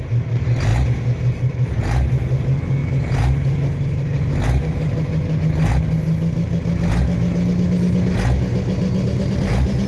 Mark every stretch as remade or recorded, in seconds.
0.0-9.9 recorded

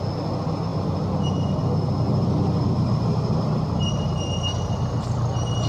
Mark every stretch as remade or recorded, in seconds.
0.0-0.7 recorded; 0.7-4.1 remade; 4.1-5.7 recorded

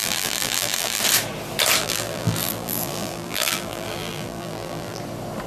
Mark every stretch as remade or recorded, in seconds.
0.0-1.0 remade; 1.0-1.8 recorded; 1.8-5.0 remade; 5.0-5.5 recorded

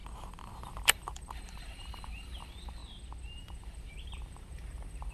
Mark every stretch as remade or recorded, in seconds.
0.0-0.8 recorded; 0.8-2.8 remade; 2.8-3.4 recorded; 3.4-5.1 remade

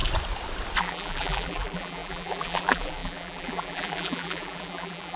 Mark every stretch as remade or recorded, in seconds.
0.0-0.8 recorded; 0.8-5.2 remade

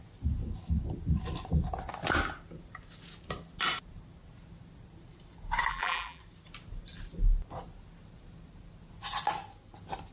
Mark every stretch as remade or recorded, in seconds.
0.0-5.7 recorded; 5.7-6.2 remade; 6.2-10.1 recorded